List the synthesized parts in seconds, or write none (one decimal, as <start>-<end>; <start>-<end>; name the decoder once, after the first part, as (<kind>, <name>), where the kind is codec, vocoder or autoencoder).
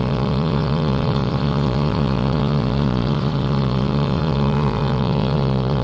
0.0-5.8 (vocoder, Vocos)